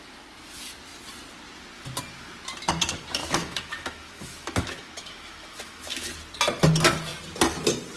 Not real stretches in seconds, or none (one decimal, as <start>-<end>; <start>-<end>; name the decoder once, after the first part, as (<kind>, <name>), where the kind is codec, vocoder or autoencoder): 3.2-6.1 (autoencoder, DAC-VAE)